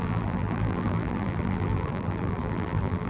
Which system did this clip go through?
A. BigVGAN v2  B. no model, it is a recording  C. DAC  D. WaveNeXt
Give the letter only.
A